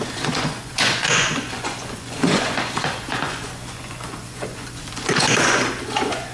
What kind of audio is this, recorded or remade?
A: remade